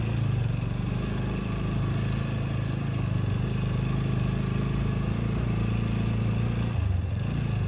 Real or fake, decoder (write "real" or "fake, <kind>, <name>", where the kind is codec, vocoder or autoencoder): real